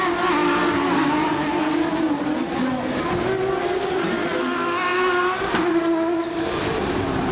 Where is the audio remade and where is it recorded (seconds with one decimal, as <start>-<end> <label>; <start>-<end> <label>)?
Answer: 0.0-7.3 recorded